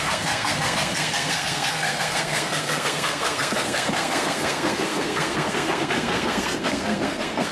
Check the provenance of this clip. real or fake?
fake